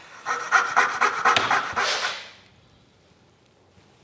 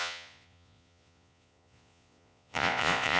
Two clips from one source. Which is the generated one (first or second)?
second